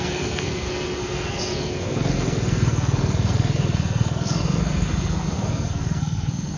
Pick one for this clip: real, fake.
fake